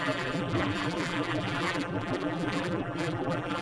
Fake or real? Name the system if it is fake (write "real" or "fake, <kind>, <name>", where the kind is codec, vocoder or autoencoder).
fake, vocoder, BigVGAN v2